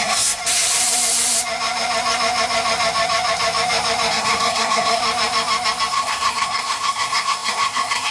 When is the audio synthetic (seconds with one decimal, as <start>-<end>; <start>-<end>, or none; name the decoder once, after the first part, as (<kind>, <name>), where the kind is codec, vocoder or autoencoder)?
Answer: 0.0-0.4 (codec, SNAC); 4.1-5.0; 5.9-8.1